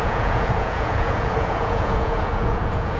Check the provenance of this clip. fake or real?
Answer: fake